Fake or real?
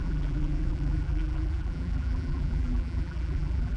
fake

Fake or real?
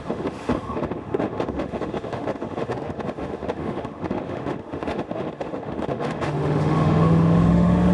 fake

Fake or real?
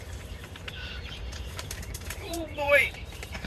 fake